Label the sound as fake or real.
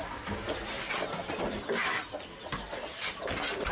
real